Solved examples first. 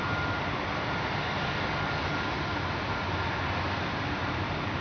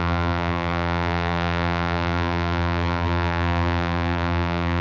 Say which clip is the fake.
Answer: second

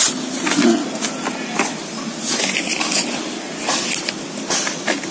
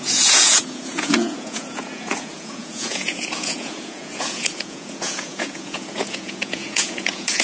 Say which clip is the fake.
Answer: second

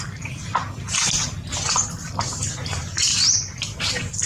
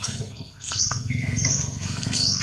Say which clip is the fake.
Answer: second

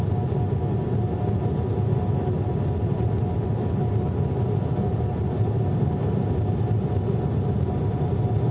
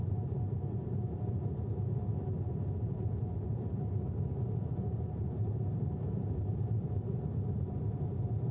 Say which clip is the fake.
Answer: second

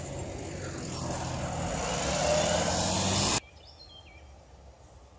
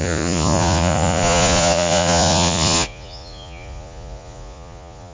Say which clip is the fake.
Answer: second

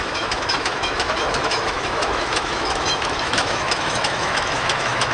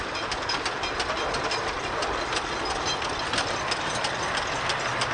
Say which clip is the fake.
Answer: first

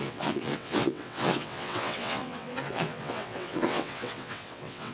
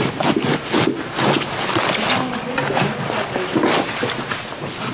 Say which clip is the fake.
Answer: first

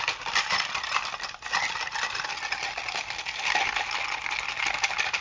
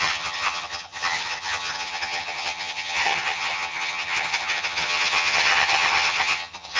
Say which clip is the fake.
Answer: second